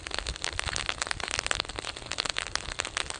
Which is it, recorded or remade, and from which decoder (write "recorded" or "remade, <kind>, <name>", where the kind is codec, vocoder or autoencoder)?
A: recorded